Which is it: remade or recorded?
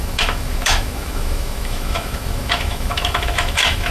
remade